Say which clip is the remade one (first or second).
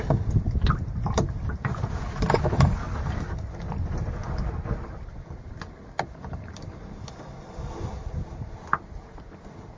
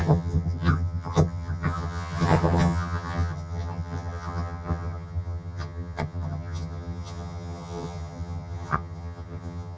second